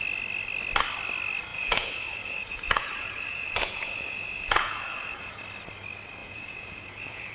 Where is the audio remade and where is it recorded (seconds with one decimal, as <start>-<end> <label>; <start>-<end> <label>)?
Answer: 0.0-1.5 recorded; 1.5-5.4 remade; 5.4-6.2 recorded; 6.2-7.3 remade